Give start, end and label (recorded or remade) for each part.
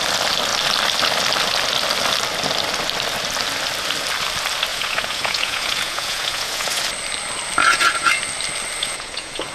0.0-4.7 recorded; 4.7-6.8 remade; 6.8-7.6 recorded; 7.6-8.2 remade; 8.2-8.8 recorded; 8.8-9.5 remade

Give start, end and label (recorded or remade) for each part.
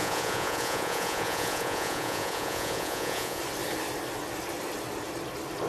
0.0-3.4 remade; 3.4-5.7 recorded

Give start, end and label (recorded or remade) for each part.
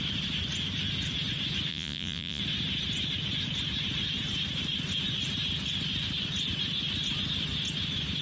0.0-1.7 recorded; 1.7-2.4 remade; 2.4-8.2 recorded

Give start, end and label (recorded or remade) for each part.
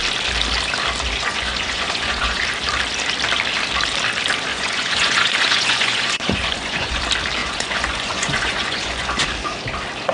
0.0-1.2 recorded; 1.2-2.4 remade; 2.4-4.5 recorded; 4.5-7.0 remade; 7.0-7.4 recorded; 7.4-9.2 remade; 9.2-10.1 recorded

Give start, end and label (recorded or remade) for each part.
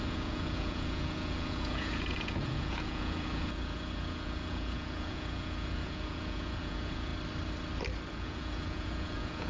0.0-7.1 remade; 7.1-8.1 recorded; 8.1-9.5 remade